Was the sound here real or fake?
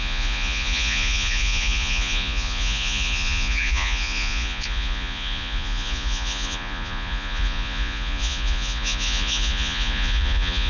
fake